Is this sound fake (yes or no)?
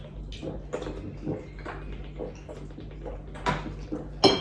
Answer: no